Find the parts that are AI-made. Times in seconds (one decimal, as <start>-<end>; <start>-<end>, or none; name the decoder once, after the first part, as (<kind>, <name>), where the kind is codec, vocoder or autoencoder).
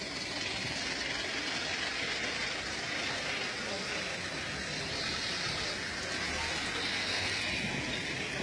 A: 6.9-7.4 (codec, SNAC)